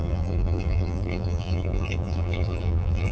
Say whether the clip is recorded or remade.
remade